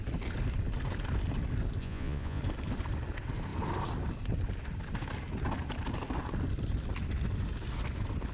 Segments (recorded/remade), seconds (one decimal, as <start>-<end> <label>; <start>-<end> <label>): 0.0-1.8 recorded; 1.8-2.4 remade; 2.4-8.3 recorded